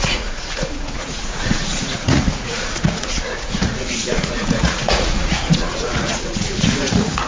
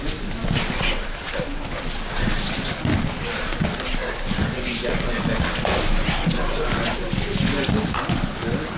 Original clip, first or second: second